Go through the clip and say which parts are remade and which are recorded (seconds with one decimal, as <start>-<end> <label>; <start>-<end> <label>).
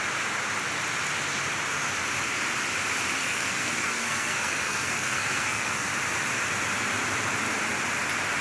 0.0-3.2 recorded; 3.2-5.9 remade; 5.9-8.4 recorded